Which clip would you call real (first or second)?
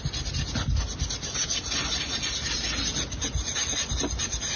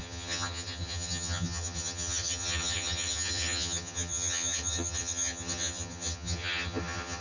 first